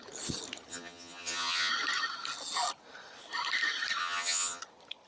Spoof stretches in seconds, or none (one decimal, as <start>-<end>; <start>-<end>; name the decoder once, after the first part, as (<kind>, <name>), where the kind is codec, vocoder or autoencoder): 0.7-1.7 (vocoder, HiFi-GAN); 4.0-4.6